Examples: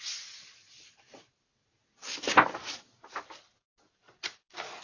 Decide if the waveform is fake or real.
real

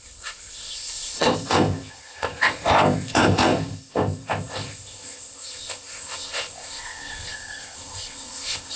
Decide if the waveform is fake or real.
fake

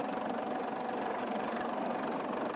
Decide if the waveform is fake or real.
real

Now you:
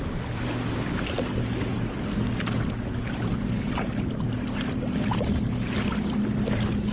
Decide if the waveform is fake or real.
real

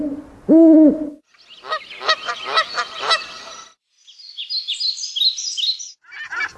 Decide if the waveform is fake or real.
real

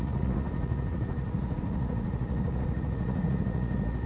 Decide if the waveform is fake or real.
fake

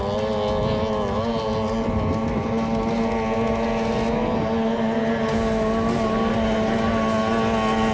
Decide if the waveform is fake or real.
real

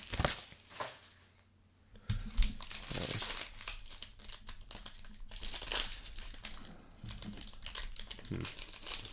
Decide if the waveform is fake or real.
real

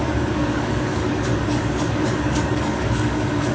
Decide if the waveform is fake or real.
fake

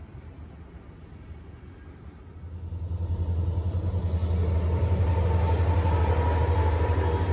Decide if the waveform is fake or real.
real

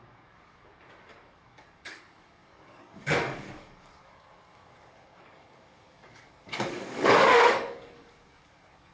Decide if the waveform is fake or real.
fake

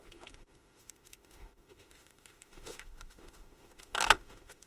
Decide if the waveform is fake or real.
fake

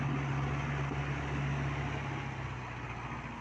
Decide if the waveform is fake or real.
real